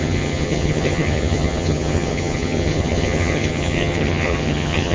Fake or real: fake